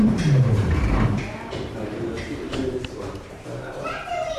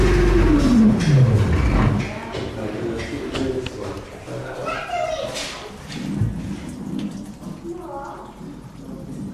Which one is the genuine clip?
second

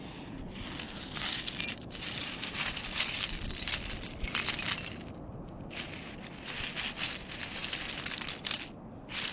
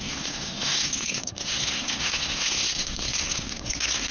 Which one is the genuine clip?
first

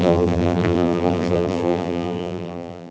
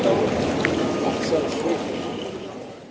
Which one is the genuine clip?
second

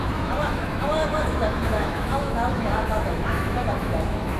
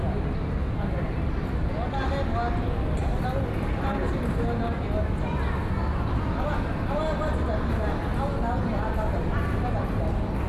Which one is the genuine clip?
second